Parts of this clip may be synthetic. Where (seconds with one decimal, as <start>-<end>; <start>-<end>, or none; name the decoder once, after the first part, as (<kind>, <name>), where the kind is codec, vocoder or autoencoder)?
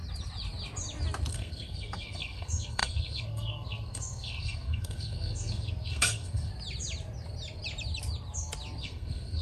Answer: 1.3-6.5 (codec, SNAC); 8.8-9.4